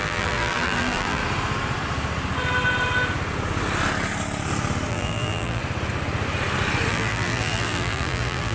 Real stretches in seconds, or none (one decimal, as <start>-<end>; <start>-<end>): 1.2-4.9; 5.6-6.9